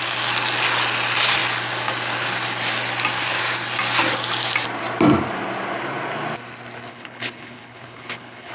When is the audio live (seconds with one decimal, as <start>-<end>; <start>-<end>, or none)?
0.0-6.9